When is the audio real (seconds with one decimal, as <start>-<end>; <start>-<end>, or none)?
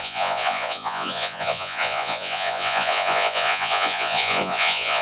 none